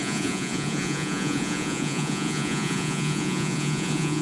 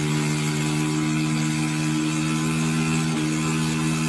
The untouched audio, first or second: second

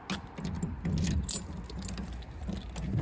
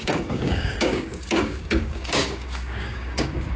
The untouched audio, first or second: first